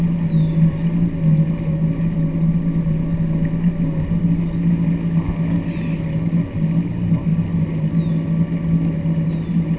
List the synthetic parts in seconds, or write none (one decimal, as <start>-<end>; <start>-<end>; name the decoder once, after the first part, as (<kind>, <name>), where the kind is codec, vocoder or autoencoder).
none